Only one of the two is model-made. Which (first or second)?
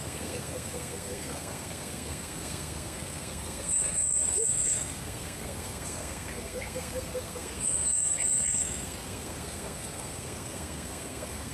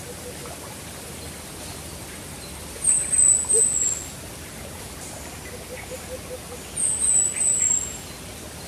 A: first